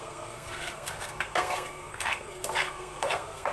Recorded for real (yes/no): no